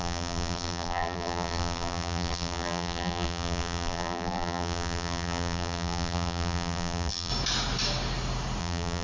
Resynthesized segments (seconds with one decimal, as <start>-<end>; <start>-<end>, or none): 0.0-7.3; 8.6-9.0